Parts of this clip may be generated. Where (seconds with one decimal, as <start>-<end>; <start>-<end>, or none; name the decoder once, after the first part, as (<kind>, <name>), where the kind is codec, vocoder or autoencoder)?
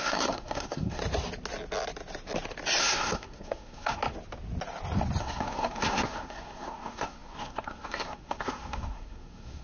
0.0-1.0 (codec, SNAC); 2.8-4.0; 5.2-9.6